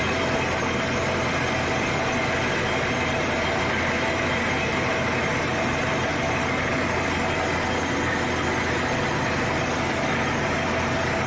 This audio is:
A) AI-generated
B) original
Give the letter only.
B